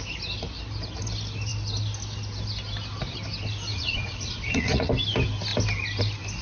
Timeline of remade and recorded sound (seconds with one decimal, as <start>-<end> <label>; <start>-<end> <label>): 0.0-3.7 recorded; 3.7-4.9 remade; 4.9-6.4 recorded